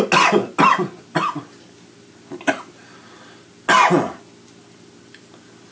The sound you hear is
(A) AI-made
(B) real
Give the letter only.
B